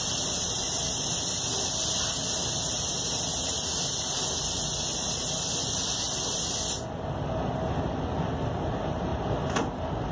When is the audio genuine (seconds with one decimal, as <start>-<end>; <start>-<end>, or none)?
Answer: 0.0-10.1

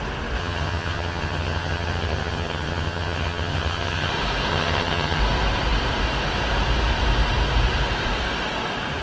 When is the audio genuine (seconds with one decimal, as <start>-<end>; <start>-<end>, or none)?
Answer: 0.0-0.4; 4.1-4.5; 5.2-9.0

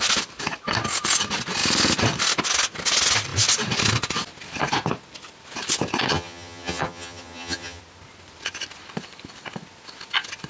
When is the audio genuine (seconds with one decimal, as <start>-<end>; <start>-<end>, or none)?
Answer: 0.0-6.1; 7.8-10.5

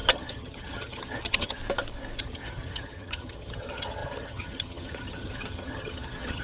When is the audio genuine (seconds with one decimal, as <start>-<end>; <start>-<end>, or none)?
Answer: 1.6-2.2

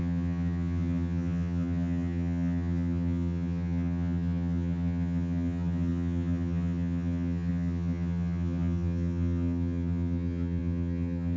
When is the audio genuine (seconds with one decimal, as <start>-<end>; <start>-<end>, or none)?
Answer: none

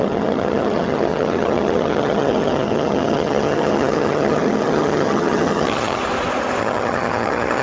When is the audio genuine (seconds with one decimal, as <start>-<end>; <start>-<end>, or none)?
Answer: 6.0-6.6

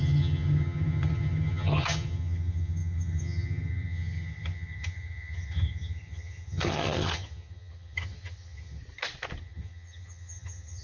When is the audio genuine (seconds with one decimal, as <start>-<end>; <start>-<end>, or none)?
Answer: 8.8-9.4

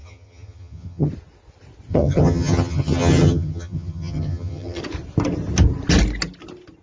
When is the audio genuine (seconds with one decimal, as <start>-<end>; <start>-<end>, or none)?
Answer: 1.1-1.9; 4.8-6.8